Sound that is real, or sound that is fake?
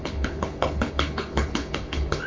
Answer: fake